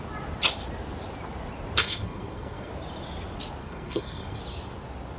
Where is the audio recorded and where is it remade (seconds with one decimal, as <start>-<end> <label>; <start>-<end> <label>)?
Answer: 0.0-1.8 recorded; 1.8-2.7 remade; 2.7-3.6 recorded; 3.6-4.4 remade; 4.4-5.2 recorded